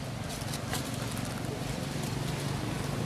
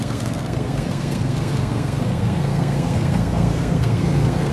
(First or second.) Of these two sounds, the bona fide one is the first